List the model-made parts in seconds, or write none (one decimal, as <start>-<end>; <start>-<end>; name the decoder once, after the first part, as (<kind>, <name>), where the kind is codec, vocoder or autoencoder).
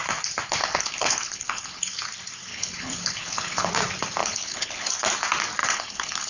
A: 0.6-1.8 (codec, HILCodec); 2.5-3.7; 4.2-4.9; 5.6-6.3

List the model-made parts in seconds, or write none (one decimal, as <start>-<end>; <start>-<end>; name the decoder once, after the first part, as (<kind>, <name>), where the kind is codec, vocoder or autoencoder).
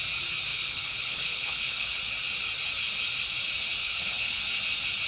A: 0.5-2.0 (codec, HILCodec); 3.8-4.4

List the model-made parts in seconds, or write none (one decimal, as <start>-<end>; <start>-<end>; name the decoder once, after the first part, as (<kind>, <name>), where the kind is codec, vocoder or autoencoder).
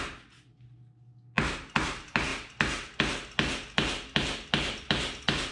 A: none